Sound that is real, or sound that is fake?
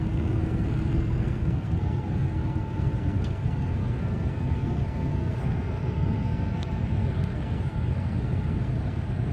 fake